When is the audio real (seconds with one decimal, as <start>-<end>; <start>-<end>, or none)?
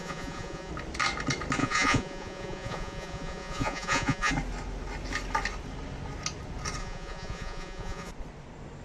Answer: 0.7-1.6; 4.3-6.8; 8.1-8.8